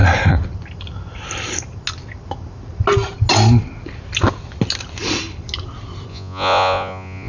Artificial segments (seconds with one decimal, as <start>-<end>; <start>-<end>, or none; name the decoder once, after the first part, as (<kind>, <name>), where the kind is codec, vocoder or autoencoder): 6.1-7.3 (vocoder, Vocos)